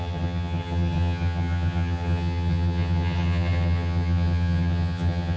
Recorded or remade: remade